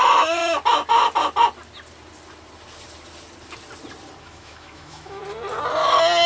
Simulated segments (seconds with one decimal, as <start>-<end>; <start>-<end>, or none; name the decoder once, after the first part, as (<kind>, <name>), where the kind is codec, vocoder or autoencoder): 0.0-0.4 (autoencoder, DAC-VAE); 4.2-5.2